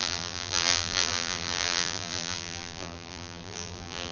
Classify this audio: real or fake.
fake